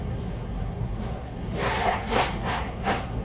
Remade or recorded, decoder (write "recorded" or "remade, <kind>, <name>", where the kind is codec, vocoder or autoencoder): remade, codec, SNAC